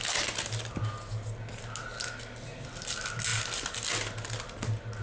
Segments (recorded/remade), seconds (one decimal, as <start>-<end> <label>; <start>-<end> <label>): 0.0-5.0 recorded